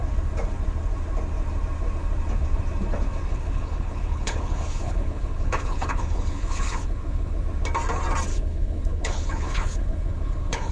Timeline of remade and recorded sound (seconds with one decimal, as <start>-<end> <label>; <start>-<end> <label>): 0.0-3.3 recorded; 3.3-7.4 remade; 7.4-8.3 recorded; 8.3-10.7 remade